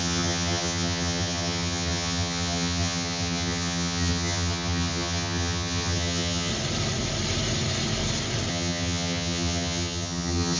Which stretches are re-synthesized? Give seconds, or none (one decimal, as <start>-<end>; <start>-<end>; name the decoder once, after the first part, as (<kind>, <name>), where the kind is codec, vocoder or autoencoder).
0.0-6.5 (vocoder, HiFi-GAN); 8.5-10.6